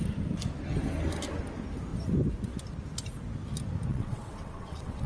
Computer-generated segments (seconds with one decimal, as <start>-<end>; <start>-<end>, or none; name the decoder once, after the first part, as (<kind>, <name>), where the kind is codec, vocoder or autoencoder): 3.9-5.1 (vocoder, WaveNeXt)

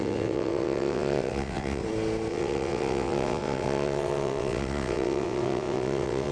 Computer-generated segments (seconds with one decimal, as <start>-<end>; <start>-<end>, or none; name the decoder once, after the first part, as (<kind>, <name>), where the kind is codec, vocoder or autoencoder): 0.0-1.8 (vocoder, WaveNeXt); 2.3-6.3

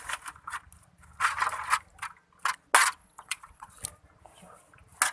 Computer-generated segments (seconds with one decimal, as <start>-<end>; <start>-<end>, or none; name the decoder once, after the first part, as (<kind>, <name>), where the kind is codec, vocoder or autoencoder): 3.0-3.7 (vocoder, WaveNeXt)